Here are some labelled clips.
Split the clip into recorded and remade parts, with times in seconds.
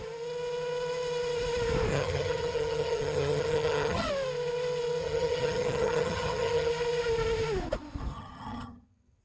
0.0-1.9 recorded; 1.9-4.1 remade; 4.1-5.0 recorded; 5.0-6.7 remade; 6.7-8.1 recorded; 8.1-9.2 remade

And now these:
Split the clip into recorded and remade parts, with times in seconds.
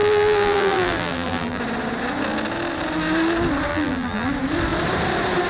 0.0-1.6 remade; 1.6-3.7 recorded; 3.7-4.3 remade; 4.3-5.5 recorded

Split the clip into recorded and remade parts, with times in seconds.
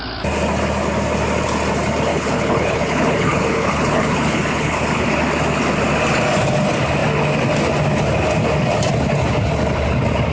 0.0-2.1 recorded; 2.1-5.1 remade; 5.1-10.3 recorded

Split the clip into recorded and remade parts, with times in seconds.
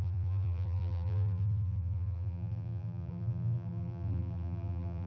0.0-5.1 remade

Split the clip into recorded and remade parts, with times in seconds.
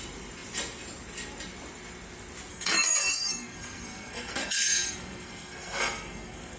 0.0-2.5 recorded; 2.5-6.6 remade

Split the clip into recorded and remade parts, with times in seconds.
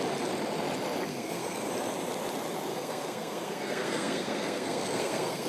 0.0-1.1 recorded; 1.1-1.7 remade; 1.7-2.7 recorded; 2.7-5.5 remade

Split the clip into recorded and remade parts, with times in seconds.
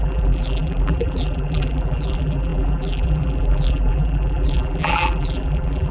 0.0-5.9 remade